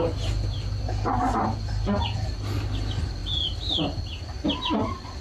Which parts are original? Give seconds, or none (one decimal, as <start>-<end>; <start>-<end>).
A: 0.0-5.2